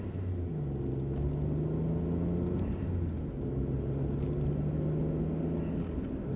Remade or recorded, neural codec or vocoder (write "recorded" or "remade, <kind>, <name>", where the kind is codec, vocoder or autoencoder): recorded